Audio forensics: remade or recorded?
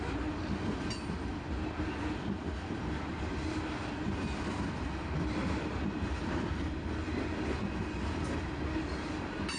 recorded